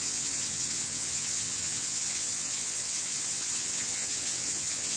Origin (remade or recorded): remade